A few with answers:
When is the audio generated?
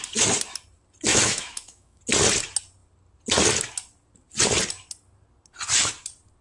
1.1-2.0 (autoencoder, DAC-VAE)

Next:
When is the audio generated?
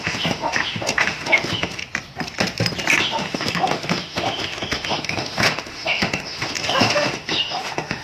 0.0-1.8 (autoencoder, DAC-VAE); 3.0-8.0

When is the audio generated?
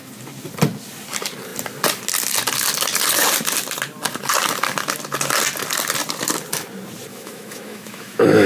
7.1-8.5 (autoencoder, DAC-VAE)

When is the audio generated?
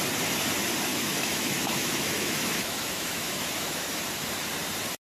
0.9-4.0 (autoencoder, DAC-VAE)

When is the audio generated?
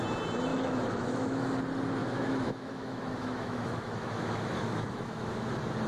0.5-1.6 (autoencoder, DAC-VAE); 2.0-5.5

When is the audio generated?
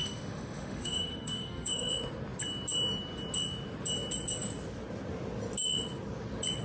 0.0-1.9 (autoencoder, DAC-VAE)